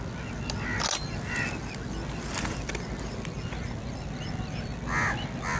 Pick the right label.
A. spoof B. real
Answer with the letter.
B